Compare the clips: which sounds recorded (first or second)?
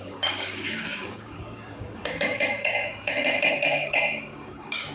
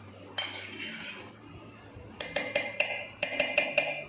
second